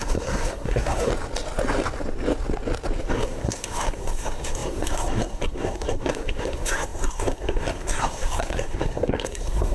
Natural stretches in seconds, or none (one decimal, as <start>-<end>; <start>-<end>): 1.1-3.1